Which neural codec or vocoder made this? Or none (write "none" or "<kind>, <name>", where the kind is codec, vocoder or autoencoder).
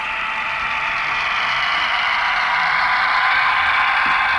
vocoder, BigVGAN v2